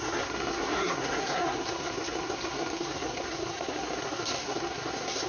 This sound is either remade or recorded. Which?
remade